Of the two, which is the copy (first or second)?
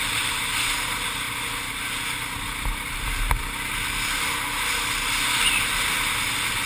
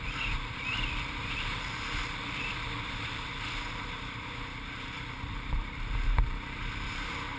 second